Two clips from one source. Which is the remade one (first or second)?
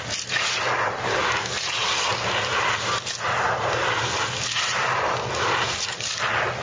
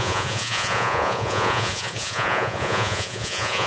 second